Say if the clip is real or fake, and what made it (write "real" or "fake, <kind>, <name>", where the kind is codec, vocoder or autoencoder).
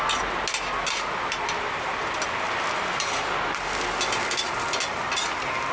real